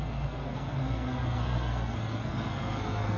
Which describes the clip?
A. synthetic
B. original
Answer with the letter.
A